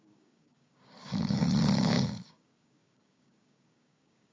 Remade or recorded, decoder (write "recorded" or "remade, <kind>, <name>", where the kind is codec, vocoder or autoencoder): remade, codec, DAC